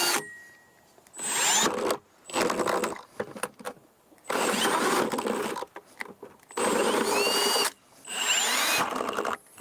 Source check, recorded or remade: recorded